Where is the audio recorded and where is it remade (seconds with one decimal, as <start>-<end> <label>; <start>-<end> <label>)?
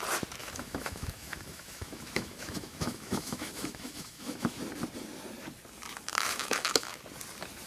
0.0-0.4 recorded; 0.4-4.6 remade; 4.6-6.1 recorded; 6.1-7.0 remade; 7.0-7.7 recorded